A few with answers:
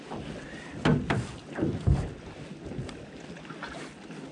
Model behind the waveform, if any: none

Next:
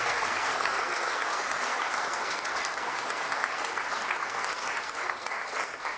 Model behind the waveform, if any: codec, SNAC